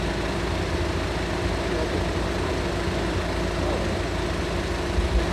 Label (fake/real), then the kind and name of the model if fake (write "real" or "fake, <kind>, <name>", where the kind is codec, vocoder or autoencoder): real